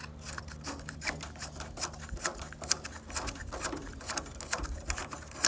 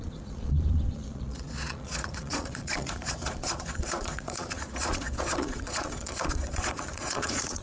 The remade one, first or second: second